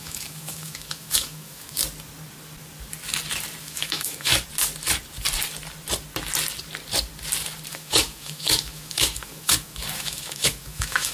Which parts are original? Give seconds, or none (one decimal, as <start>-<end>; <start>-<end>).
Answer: 1.8-3.6; 4.3-7.7